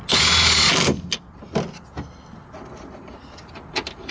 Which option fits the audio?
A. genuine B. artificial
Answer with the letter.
A